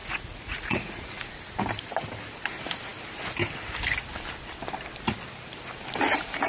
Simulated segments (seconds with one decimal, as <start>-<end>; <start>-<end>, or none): 0.0-1.3